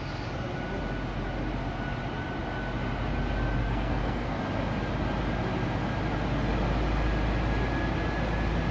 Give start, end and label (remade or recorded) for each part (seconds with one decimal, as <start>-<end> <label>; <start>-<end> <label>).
0.0-3.6 recorded; 3.6-4.4 remade; 4.4-8.7 recorded